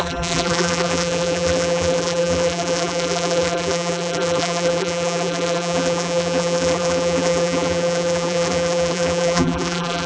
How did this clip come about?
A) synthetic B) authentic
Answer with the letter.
A